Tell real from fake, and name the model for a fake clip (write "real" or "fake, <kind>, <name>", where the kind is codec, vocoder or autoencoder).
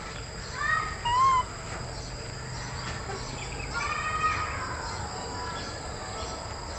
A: real